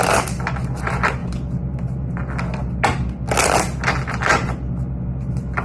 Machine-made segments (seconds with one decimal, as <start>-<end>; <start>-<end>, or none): none